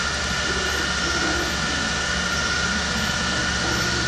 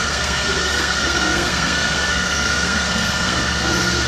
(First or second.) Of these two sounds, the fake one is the second